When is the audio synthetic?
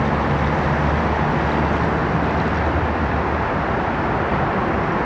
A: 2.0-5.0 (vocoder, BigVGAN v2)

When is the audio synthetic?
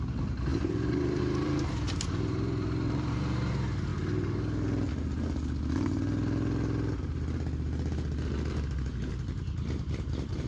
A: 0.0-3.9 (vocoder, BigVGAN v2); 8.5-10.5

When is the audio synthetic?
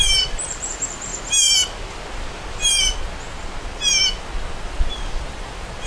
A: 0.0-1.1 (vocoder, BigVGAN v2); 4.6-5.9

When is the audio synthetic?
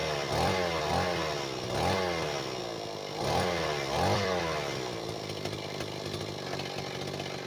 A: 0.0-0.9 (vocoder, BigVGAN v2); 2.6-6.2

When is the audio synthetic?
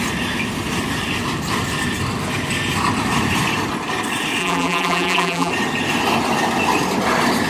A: 4.4-5.5 (vocoder, BigVGAN v2)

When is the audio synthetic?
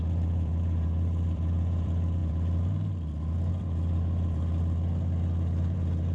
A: 0.0-6.1 (vocoder, BigVGAN v2)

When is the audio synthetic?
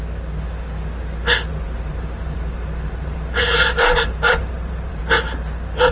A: 1.5-5.0 (vocoder, BigVGAN v2)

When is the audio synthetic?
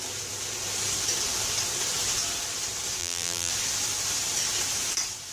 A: 3.0-3.5 (vocoder, BigVGAN v2)